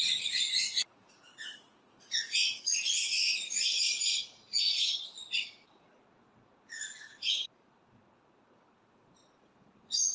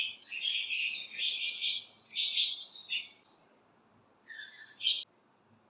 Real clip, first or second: second